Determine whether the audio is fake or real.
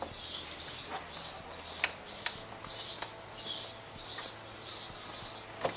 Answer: real